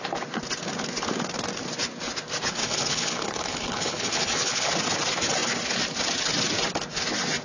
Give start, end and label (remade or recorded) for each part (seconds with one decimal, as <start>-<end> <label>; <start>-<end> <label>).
0.0-2.6 recorded; 2.6-4.7 remade; 4.7-7.4 recorded